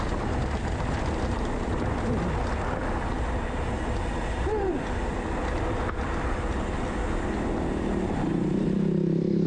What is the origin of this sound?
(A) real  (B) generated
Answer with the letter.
A